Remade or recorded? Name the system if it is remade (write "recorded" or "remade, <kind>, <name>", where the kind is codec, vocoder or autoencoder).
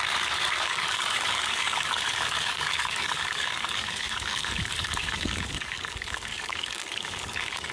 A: remade, codec, DAC